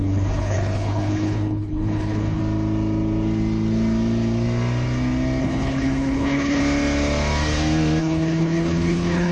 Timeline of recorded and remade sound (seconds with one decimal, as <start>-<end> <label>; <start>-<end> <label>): 0.0-2.4 remade; 2.4-5.4 recorded; 5.4-6.6 remade; 6.6-8.0 recorded; 8.0-9.3 remade